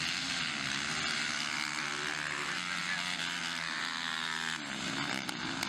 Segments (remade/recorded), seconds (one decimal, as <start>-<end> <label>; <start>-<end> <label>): 0.0-5.7 recorded